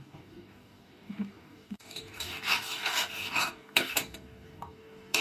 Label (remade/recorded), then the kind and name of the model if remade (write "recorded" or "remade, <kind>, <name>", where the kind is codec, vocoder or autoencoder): remade, codec, DAC